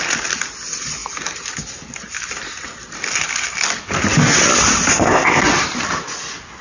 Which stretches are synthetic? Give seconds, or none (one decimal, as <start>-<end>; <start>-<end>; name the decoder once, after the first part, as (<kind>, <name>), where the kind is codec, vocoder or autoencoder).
4.9-5.4 (codec, ZipCodec)